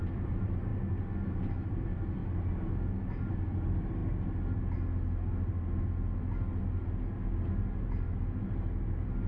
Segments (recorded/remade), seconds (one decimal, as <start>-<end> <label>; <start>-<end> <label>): 0.0-0.7 remade; 0.7-1.5 recorded; 1.5-2.2 remade; 2.2-3.3 recorded; 3.3-4.0 remade; 4.0-8.9 recorded; 8.9-9.3 remade